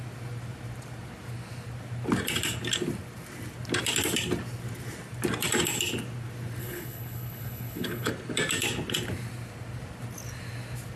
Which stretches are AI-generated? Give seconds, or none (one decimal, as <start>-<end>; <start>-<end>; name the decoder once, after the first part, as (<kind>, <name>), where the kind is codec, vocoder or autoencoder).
6.6-8.1 (codec, HILCodec)